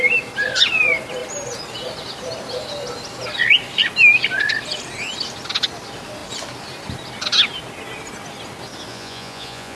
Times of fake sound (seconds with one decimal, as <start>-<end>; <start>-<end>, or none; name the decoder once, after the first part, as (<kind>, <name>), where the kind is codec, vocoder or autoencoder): 8.9-9.8 (vocoder, Vocos)